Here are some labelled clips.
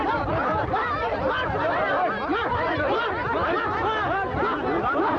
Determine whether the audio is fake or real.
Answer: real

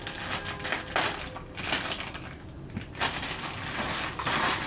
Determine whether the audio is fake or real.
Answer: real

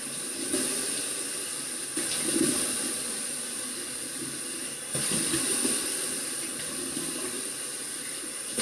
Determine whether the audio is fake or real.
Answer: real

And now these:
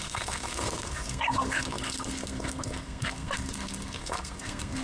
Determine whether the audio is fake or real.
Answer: fake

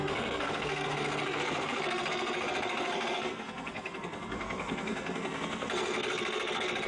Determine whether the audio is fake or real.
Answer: fake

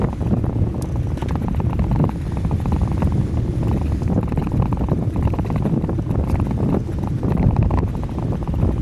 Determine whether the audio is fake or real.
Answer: real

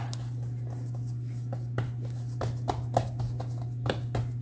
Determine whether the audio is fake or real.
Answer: real